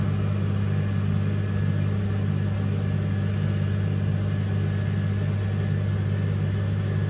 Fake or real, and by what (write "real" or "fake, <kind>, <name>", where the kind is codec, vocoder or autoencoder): real